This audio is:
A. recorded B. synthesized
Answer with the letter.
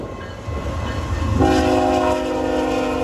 A